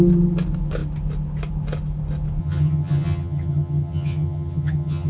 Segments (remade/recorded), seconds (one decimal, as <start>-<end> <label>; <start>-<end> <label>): 0.0-2.4 recorded; 2.4-5.1 remade